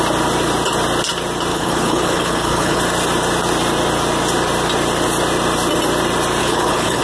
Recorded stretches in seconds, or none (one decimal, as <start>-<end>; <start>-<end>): 0.0-1.5; 2.8-6.4